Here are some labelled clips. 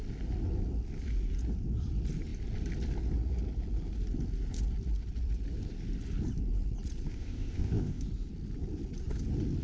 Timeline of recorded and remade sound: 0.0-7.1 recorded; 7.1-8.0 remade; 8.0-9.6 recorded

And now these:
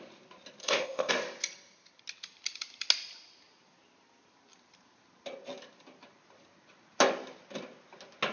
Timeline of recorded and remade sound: 0.0-0.6 recorded; 0.6-1.1 remade; 1.1-8.3 recorded

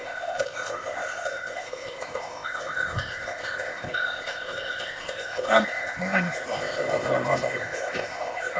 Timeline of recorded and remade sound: 0.0-8.6 remade

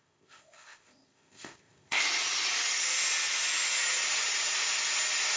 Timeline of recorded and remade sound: 0.0-2.0 remade; 2.0-5.4 recorded